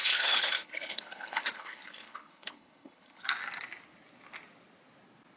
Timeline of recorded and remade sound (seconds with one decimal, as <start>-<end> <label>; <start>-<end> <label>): 0.0-3.2 remade; 3.2-5.4 recorded